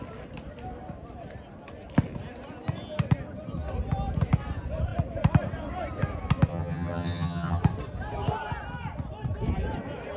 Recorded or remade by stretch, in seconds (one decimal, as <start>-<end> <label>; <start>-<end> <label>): 0.0-6.5 recorded; 6.5-7.6 remade; 7.6-10.2 recorded